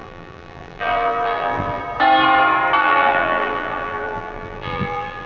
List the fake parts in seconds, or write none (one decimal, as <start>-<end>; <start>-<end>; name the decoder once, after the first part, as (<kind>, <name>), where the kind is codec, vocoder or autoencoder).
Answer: 0.0-1.8 (vocoder, BigVGAN v2); 2.8-5.3